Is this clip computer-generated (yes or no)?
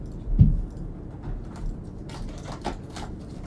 no